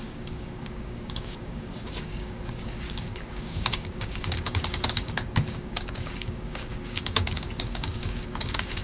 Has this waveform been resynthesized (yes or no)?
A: yes